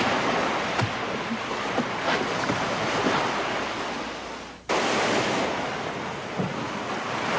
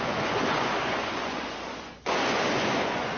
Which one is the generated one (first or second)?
second